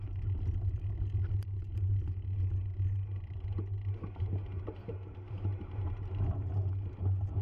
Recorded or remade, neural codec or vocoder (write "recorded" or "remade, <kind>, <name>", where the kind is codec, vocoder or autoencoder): recorded